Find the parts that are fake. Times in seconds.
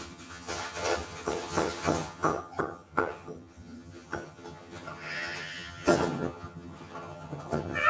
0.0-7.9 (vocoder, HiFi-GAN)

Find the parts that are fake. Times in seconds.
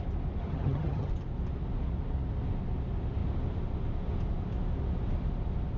0.4-1.1 (vocoder, HiFi-GAN)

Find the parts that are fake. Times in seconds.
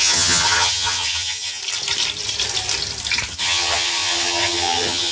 0.0-1.6 (vocoder, HiFi-GAN); 3.3-5.1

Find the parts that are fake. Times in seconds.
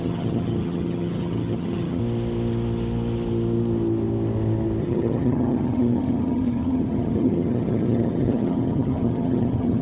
0.0-2.0 (vocoder, HiFi-GAN); 4.8-9.8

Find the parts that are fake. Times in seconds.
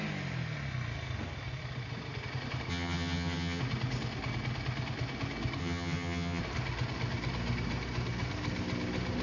2.7-3.6 (vocoder, HiFi-GAN); 5.6-6.4